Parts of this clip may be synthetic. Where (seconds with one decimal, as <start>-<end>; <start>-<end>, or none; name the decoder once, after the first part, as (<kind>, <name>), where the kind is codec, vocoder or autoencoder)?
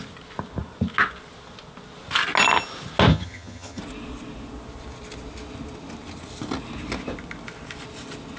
3.1-3.8 (vocoder, HiFi-GAN)